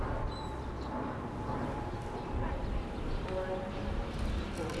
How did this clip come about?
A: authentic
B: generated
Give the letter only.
A